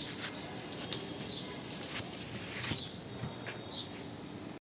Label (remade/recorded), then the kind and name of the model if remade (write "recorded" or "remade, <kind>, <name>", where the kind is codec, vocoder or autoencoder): recorded